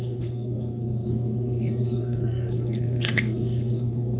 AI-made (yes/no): yes